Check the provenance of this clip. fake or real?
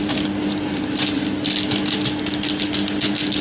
real